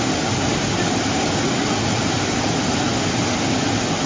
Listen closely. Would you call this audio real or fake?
real